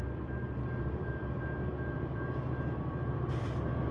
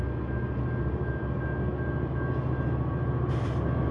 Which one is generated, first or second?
first